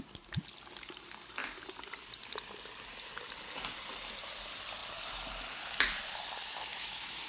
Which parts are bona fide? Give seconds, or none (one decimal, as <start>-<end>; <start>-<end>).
0.0-6.7